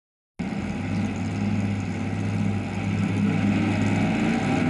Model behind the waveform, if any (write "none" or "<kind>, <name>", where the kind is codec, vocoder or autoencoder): none